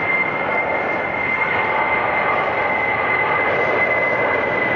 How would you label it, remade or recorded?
recorded